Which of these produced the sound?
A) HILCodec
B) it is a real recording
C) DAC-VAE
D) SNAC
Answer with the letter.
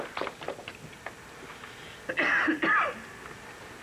B